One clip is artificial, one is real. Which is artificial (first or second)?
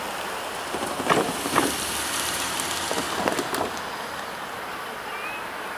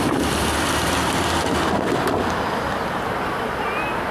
first